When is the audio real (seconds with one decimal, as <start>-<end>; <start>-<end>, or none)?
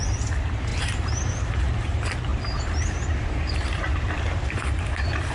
0.0-0.7; 1.7-2.3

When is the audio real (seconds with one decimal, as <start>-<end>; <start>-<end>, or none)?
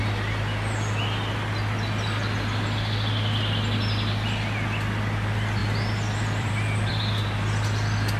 0.0-5.6; 6.9-8.2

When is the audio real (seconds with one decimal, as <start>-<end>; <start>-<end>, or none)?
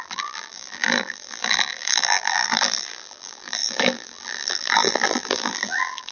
none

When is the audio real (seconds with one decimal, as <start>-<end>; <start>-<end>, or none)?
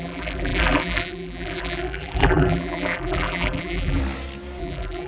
4.0-4.6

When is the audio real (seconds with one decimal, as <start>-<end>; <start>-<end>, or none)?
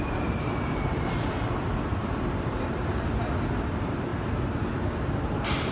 4.1-5.1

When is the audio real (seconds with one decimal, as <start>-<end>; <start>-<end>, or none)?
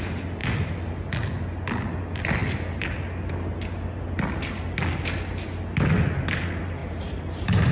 0.0-6.8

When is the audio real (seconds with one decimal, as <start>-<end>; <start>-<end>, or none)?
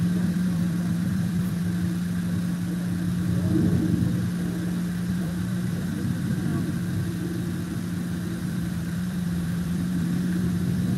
1.6-5.1; 6.5-8.4